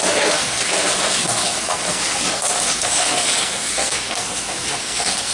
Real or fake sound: fake